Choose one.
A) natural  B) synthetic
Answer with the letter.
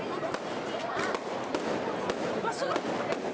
A